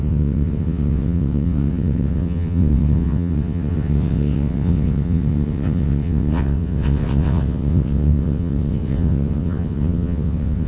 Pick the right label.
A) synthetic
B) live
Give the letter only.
A